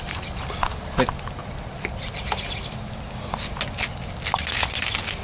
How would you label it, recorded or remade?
recorded